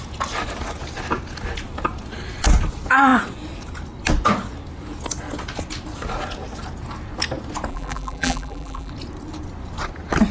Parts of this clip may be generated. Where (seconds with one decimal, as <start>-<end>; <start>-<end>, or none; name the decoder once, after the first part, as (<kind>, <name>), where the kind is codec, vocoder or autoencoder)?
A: 7.7-8.9 (vocoder, BigVGAN v2)